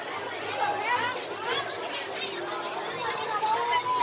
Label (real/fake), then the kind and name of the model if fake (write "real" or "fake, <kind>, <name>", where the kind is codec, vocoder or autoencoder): real